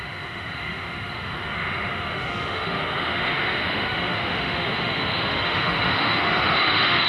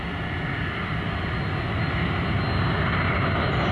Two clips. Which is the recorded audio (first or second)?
second